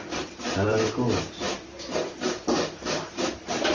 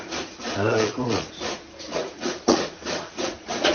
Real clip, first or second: first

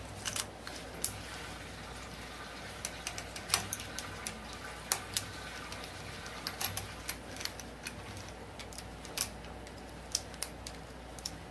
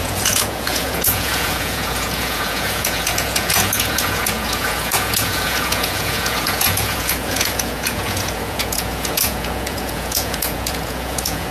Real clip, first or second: first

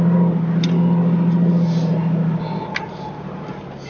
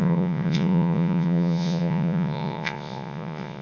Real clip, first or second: first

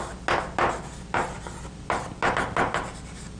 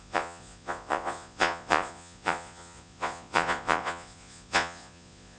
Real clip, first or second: first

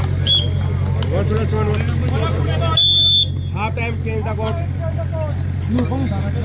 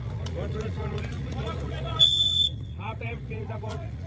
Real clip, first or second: first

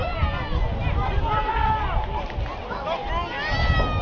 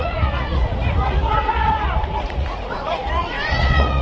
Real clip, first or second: first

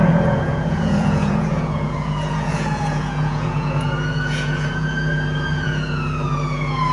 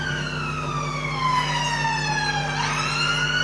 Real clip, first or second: second